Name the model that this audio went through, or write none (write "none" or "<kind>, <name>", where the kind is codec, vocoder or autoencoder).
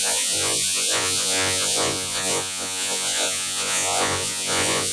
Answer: vocoder, Vocos